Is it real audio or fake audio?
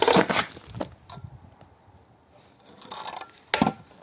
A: real